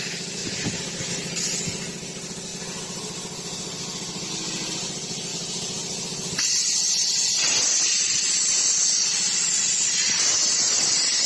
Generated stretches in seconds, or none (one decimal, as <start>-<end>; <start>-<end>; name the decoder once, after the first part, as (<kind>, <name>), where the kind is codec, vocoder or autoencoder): none